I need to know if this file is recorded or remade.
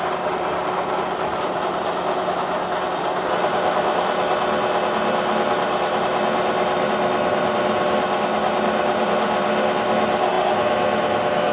recorded